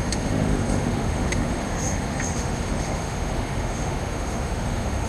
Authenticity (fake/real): fake